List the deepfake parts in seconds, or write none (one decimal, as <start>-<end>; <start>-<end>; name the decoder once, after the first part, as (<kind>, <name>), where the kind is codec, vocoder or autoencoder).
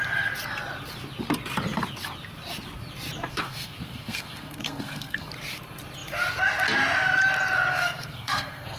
3.3-5.3 (codec, SNAC); 7.7-8.8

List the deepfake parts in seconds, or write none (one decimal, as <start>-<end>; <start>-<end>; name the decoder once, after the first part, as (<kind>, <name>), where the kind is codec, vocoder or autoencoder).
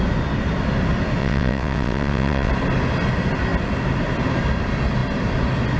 1.2-2.5 (vocoder, WaveNeXt)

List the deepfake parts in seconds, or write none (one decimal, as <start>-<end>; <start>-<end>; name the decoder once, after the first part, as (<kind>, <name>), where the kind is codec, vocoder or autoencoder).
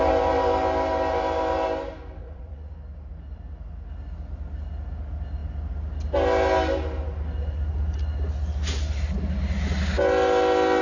2.2-2.7 (vocoder, Vocos)